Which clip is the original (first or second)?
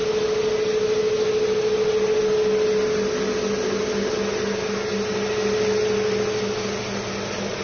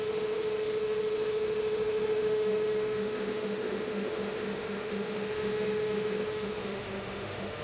first